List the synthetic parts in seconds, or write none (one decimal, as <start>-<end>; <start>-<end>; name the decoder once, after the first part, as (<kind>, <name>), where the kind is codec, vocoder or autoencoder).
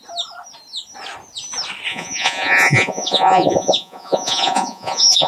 1.9-5.3 (vocoder, Vocos)